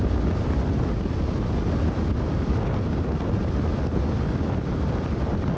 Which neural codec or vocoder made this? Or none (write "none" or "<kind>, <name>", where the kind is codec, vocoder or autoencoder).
none